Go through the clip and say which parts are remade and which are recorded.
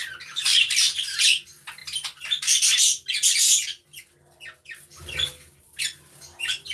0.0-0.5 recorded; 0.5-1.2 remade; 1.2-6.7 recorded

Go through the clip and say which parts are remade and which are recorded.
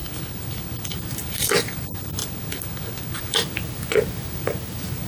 0.0-0.9 recorded; 0.9-2.2 remade; 2.2-3.2 recorded; 3.2-5.1 remade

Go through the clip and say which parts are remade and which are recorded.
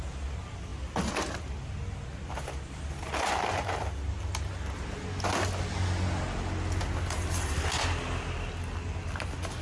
0.0-9.6 recorded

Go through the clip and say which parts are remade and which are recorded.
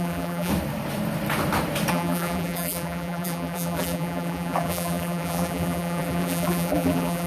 0.0-0.5 remade; 0.5-1.9 recorded; 1.9-7.3 remade